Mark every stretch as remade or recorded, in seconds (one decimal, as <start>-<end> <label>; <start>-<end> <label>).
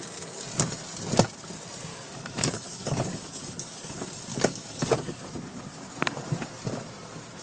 0.0-1.9 recorded; 1.9-3.9 remade; 3.9-4.3 recorded; 4.3-5.3 remade; 5.3-7.4 recorded